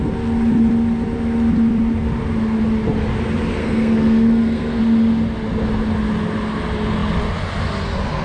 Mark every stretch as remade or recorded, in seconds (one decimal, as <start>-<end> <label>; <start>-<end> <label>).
0.0-3.6 recorded; 3.6-4.8 remade; 4.8-8.2 recorded